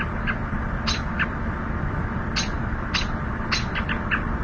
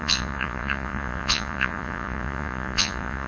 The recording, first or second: first